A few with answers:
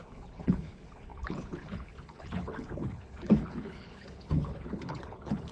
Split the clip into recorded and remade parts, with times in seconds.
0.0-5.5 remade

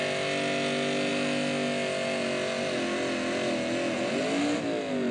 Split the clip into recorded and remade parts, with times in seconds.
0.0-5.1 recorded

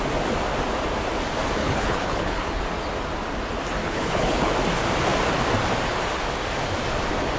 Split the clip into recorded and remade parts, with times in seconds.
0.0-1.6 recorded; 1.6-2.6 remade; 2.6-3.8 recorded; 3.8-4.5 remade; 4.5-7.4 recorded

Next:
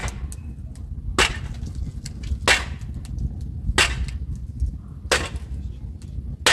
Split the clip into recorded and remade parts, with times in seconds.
0.0-6.5 recorded